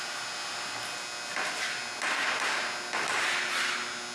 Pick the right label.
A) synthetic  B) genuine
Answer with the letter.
B